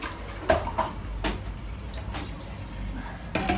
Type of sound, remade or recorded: recorded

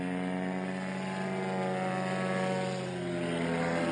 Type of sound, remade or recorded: recorded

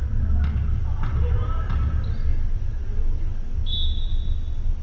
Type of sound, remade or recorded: recorded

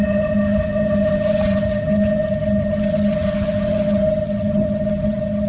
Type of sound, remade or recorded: remade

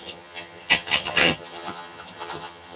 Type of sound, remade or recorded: remade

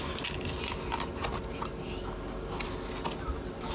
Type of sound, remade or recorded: recorded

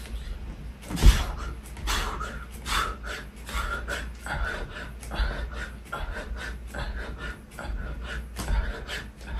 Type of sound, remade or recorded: recorded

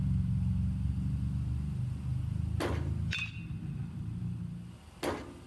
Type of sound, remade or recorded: recorded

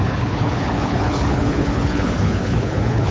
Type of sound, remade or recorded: remade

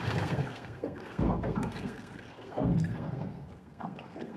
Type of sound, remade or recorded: remade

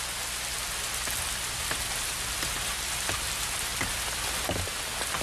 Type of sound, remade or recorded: recorded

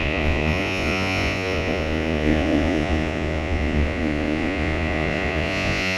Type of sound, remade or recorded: remade